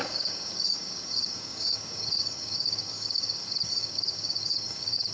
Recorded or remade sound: remade